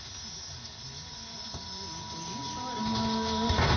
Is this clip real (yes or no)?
yes